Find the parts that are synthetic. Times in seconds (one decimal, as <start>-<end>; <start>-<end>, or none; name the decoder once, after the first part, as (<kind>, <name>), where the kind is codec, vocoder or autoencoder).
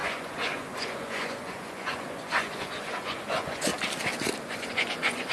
0.0-3.7 (vocoder, Vocos); 4.5-5.3